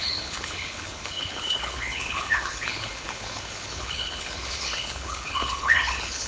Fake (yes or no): yes